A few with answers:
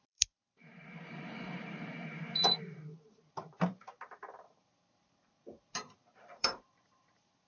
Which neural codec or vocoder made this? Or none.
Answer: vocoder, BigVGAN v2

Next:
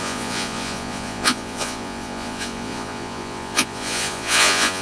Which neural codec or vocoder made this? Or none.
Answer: vocoder, Vocos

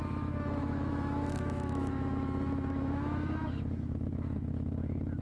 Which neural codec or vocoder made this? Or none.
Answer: autoencoder, DAC-VAE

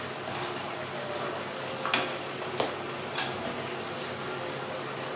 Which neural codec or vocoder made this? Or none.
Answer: none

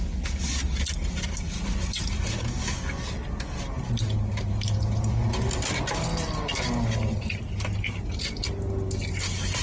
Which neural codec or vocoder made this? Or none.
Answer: none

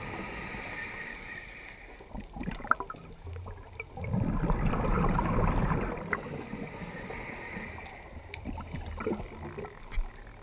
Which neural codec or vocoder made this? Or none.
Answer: none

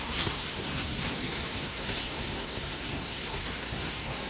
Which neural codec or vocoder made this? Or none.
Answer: codec, SNAC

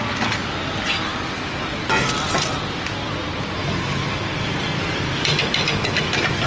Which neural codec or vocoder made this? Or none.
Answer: none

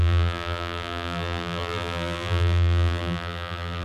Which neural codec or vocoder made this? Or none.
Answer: vocoder, BigVGAN v2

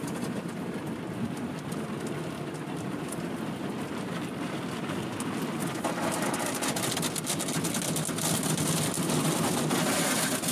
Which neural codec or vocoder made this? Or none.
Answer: none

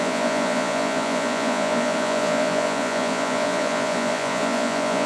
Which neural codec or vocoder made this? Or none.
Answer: vocoder, Vocos